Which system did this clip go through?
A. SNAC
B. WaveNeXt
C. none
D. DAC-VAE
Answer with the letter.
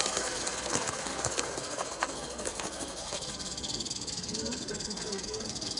A